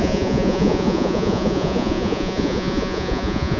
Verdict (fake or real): fake